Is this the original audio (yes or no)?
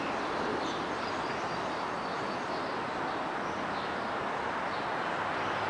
yes